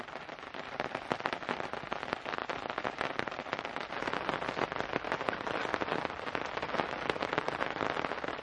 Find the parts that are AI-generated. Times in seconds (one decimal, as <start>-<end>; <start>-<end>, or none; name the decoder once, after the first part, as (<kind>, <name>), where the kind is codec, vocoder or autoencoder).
none